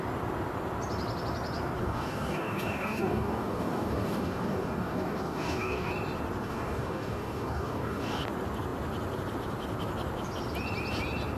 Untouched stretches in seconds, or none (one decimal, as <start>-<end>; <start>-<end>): 0.0-1.8; 5.9-6.4; 8.2-11.4